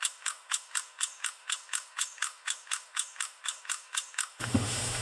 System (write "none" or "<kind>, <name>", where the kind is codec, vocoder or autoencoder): autoencoder, DAC-VAE